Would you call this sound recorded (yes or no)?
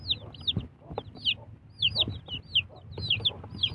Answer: yes